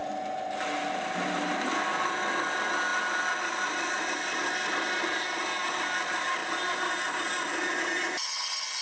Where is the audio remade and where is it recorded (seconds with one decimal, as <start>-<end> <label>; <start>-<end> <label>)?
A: 0.0-8.8 recorded